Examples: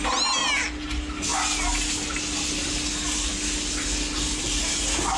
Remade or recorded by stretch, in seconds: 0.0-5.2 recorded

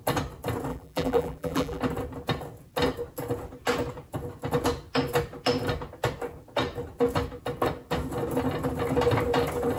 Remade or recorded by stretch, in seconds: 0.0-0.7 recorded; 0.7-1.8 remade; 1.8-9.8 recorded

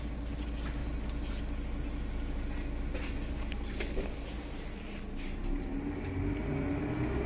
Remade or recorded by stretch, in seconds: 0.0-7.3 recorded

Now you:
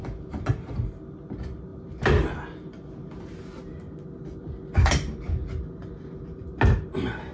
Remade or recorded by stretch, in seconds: 0.0-7.3 recorded